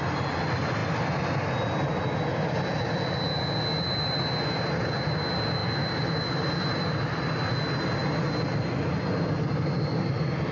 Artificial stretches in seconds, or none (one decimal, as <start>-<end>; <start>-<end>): none